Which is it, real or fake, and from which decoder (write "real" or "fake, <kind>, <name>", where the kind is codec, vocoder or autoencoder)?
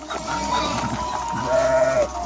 real